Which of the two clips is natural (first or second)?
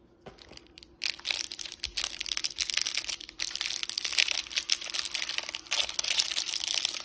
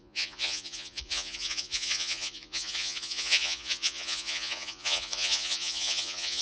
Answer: first